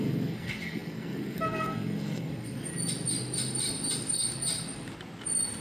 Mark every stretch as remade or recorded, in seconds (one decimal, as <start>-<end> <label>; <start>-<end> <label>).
0.0-2.7 remade; 2.7-5.6 recorded